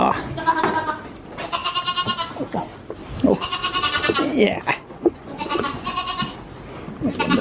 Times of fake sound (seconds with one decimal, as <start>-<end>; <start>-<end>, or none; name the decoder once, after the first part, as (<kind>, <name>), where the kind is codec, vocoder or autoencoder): 4.7-6.3 (vocoder, Vocos)